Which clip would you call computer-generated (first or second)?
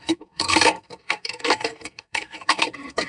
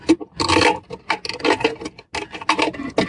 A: first